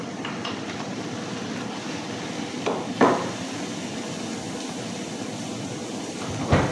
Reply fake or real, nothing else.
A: fake